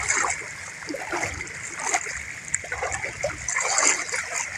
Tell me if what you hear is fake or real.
real